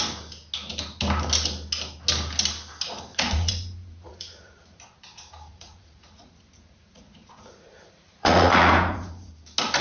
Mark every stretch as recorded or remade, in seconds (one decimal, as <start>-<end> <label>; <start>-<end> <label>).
0.0-3.1 recorded; 3.1-4.8 remade; 4.8-5.5 recorded; 5.5-9.3 remade; 9.3-9.8 recorded